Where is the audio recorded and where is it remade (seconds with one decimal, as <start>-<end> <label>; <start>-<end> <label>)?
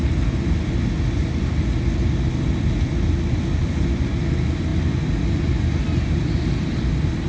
0.0-7.3 recorded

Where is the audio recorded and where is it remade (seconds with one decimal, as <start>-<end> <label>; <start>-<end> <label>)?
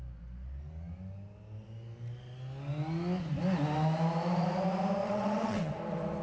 0.0-5.0 recorded; 5.0-5.7 remade; 5.7-6.2 recorded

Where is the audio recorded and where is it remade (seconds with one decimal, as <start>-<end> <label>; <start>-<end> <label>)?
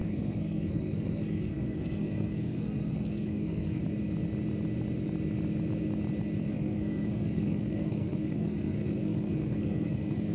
0.0-3.8 remade; 3.8-6.4 recorded; 6.4-10.3 remade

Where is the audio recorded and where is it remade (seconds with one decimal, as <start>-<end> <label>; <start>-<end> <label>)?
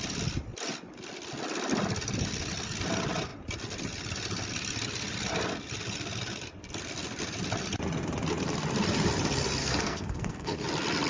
0.0-9.6 recorded; 9.6-10.6 remade; 10.6-11.1 recorded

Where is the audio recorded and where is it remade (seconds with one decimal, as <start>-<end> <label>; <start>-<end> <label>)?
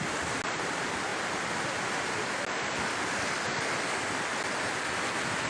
0.0-5.5 recorded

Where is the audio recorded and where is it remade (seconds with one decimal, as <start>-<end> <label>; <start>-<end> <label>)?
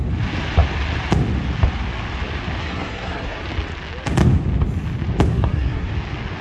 0.0-2.6 recorded; 2.6-3.4 remade; 3.4-5.3 recorded; 5.3-5.9 remade; 5.9-6.4 recorded